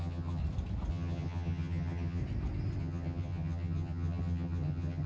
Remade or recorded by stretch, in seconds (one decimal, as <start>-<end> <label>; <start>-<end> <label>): 0.0-0.4 remade; 0.4-0.9 recorded; 0.9-2.2 remade; 2.2-2.8 recorded; 2.8-5.1 remade